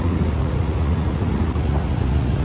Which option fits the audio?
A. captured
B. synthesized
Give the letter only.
B